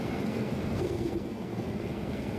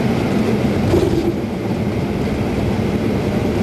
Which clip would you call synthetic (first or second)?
first